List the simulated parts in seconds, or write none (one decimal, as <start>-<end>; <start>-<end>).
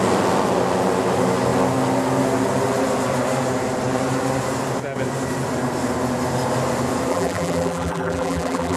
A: 7.1-8.8